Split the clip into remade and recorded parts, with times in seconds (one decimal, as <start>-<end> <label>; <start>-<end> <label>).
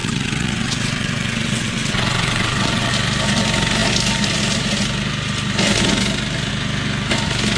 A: 0.0-2.9 remade; 2.9-7.6 recorded